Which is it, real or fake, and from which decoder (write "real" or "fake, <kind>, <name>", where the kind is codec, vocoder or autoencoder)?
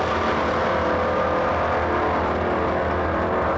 real